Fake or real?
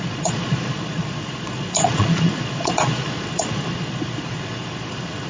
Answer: fake